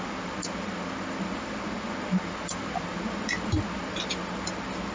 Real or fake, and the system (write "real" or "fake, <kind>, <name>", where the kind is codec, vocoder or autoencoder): real